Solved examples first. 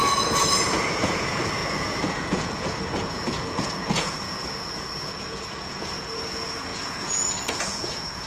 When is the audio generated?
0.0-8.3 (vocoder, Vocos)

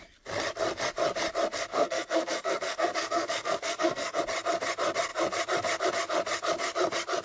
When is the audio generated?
1.7-4.2 (codec, SNAC)

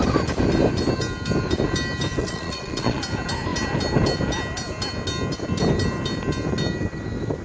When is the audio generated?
2.2-3.0 (vocoder, Vocos)

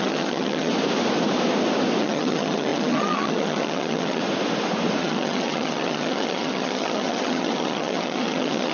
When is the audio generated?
0.0-0.7 (vocoder, HiFi-GAN); 2.0-4.2; 5.0-8.7